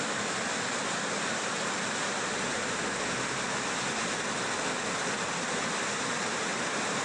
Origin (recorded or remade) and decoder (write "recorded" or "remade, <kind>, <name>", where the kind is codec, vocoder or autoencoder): recorded